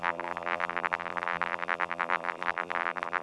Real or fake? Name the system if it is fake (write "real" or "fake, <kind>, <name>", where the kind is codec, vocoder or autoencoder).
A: fake, vocoder, BigVGAN v2